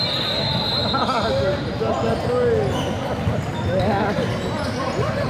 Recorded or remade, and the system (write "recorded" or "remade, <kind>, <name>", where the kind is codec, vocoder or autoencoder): recorded